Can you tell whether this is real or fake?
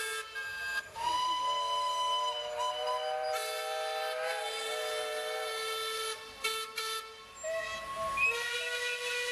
real